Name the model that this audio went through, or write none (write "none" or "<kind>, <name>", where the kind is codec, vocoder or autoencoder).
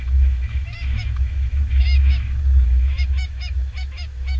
autoencoder, DAC-VAE